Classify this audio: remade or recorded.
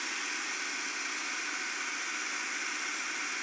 recorded